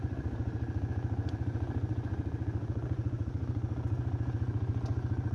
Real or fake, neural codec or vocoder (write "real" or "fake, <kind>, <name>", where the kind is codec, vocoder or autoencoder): fake, vocoder, Vocos